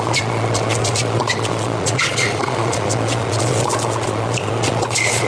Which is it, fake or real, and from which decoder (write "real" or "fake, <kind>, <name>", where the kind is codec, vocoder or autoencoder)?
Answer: fake, vocoder, Vocos